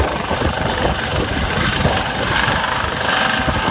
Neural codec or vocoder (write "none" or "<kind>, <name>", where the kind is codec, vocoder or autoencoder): none